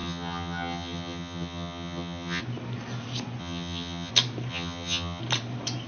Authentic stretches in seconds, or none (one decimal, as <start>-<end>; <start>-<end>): 2.4-3.4; 4.1-4.5; 5.2-5.9